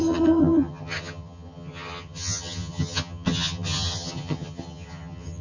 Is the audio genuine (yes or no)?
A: no